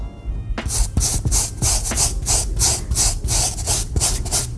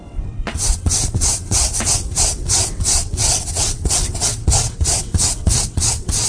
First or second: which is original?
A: first